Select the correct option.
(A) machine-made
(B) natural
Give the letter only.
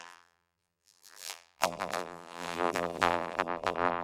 A